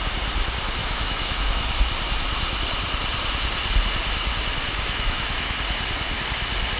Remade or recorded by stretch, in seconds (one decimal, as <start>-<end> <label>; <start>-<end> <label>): 0.0-0.8 recorded; 0.8-1.4 remade; 1.4-4.6 recorded; 4.6-5.6 remade; 5.6-6.8 recorded